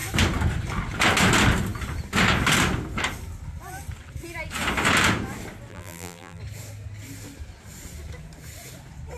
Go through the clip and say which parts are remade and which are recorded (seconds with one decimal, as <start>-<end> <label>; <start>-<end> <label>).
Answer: 0.0-5.7 recorded; 5.7-6.4 remade; 6.4-9.2 recorded